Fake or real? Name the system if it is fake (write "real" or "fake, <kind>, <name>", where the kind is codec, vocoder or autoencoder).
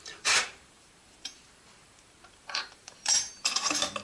fake, vocoder, BigVGAN v2